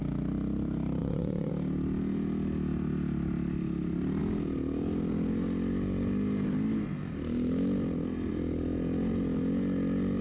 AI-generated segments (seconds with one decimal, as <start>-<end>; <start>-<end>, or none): 1.0-1.5